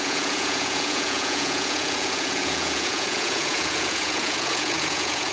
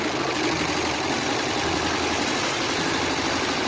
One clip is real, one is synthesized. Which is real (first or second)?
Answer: second